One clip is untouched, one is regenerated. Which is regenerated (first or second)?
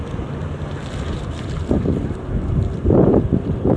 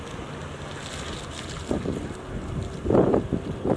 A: first